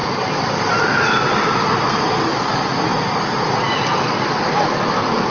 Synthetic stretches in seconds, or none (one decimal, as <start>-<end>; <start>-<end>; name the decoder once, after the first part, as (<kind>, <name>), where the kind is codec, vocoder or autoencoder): none